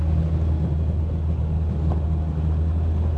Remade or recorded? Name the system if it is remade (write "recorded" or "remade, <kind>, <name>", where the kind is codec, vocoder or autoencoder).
recorded